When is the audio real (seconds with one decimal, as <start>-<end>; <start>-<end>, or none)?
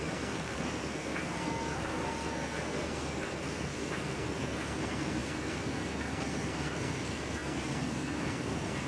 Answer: none